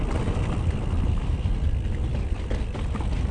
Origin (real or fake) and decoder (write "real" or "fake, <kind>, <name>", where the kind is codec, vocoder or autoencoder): real